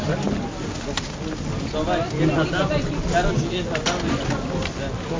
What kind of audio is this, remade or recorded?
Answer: recorded